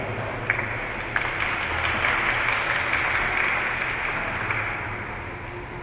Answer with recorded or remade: recorded